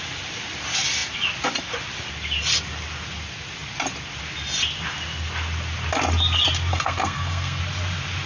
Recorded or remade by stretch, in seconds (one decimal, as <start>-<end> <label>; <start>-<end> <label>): 0.0-6.7 recorded; 6.7-7.6 remade; 7.6-8.3 recorded